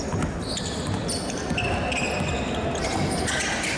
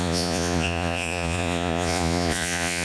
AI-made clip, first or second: second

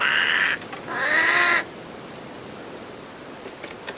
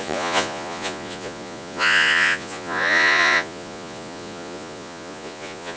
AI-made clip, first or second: second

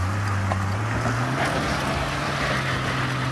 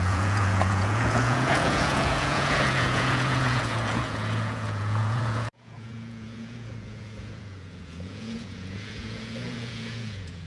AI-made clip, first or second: second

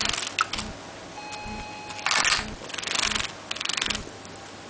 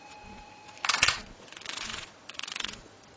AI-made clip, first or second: second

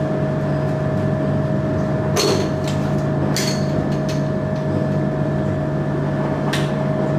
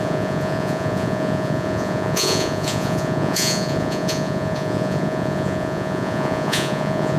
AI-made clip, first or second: second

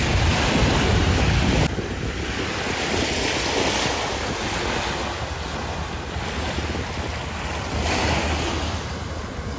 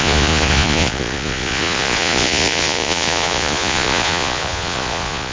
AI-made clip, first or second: second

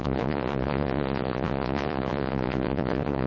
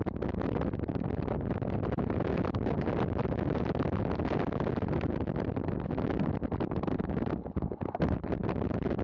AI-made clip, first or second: first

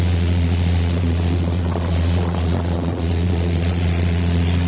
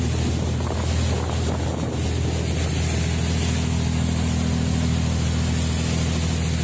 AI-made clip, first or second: first